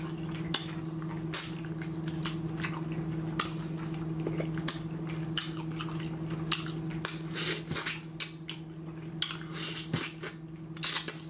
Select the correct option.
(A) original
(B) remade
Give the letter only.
A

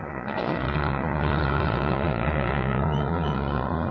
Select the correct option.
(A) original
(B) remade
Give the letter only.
B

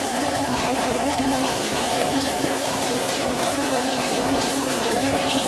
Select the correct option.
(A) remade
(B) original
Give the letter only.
A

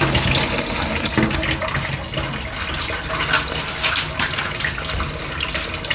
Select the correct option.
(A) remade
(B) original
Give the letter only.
B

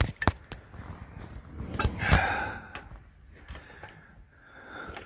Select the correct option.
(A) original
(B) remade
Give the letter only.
A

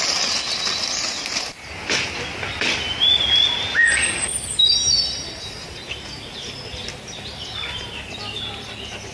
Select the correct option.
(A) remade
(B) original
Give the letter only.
B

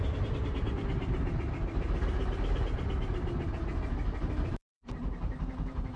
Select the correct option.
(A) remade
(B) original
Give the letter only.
B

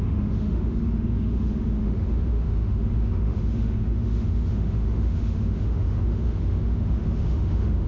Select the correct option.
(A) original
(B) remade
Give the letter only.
B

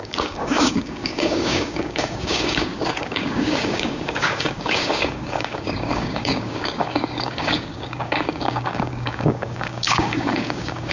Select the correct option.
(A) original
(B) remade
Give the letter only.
B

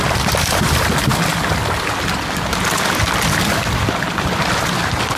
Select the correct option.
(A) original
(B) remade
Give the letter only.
A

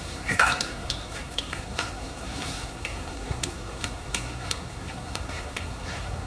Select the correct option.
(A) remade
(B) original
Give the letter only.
A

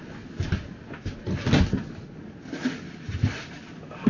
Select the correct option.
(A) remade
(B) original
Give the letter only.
B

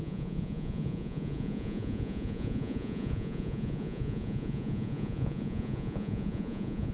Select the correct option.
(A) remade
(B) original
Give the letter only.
A